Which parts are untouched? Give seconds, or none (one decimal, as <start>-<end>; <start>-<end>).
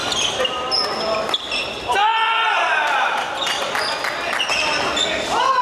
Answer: 0.0-2.0; 3.7-5.6